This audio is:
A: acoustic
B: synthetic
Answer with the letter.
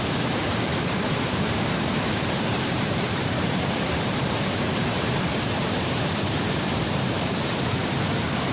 B